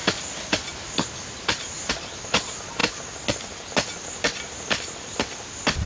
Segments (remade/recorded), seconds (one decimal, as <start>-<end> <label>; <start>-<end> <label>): 0.0-5.9 recorded